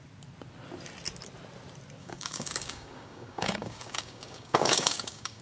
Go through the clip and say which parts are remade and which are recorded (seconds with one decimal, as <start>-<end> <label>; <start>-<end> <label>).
0.0-2.0 recorded; 2.0-5.4 remade

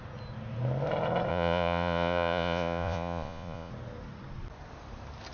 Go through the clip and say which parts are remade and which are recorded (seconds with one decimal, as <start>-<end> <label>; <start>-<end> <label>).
0.0-1.3 recorded; 1.3-3.7 remade; 3.7-5.3 recorded

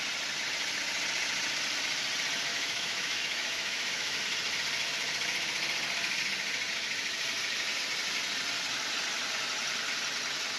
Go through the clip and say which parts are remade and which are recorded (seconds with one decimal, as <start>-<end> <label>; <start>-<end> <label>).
0.0-2.5 recorded; 2.5-4.2 remade; 4.2-10.6 recorded

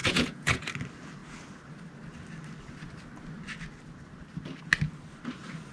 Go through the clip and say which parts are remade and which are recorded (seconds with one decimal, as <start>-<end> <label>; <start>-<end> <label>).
0.0-0.7 remade; 0.7-5.7 recorded

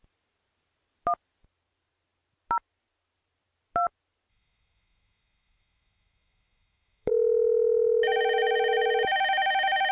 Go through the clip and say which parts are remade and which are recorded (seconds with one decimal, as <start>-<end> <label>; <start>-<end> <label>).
0.0-4.3 recorded; 4.3-7.1 remade; 7.1-9.9 recorded